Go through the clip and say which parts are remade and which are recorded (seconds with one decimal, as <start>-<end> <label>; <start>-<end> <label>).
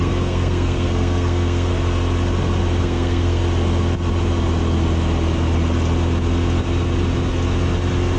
0.0-1.7 remade; 1.7-2.8 recorded; 2.8-3.4 remade; 3.4-8.2 recorded